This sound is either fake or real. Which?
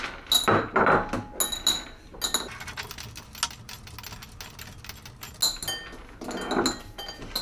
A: real